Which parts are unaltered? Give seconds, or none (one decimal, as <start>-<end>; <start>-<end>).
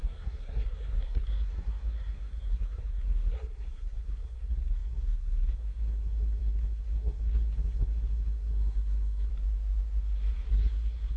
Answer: 9.3-10.5